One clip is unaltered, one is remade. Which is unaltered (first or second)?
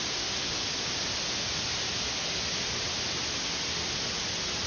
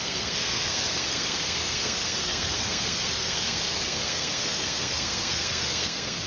first